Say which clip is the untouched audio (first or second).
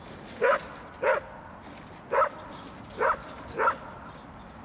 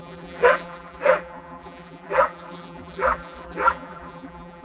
first